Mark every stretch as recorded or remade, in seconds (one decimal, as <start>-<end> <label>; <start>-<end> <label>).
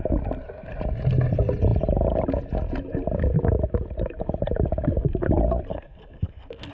0.0-5.7 recorded; 5.7-6.7 remade